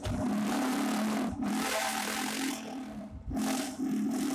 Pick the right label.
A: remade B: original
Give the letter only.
A